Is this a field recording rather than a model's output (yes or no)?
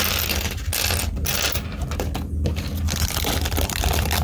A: yes